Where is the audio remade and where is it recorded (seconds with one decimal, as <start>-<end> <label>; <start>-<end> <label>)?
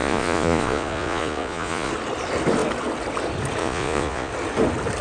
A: 0.0-1.9 remade; 1.9-3.6 recorded; 3.6-4.3 remade; 4.3-5.0 recorded